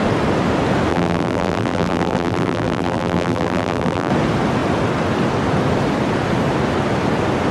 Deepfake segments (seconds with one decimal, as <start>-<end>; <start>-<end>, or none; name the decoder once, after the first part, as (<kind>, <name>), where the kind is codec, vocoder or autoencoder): 0.9-4.1 (vocoder, BigVGAN v2)